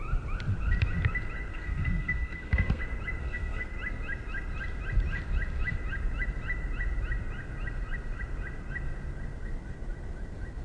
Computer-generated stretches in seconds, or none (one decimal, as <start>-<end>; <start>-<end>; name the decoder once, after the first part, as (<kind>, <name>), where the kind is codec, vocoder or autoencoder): 1.5-2.8 (codec, SNAC); 3.2-3.7